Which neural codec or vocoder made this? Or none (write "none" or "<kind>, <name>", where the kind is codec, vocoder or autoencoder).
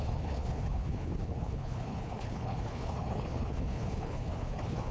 codec, HILCodec